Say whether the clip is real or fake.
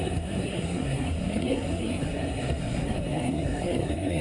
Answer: fake